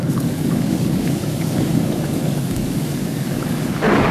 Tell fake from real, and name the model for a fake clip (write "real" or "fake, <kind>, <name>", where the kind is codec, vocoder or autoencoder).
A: fake, codec, DAC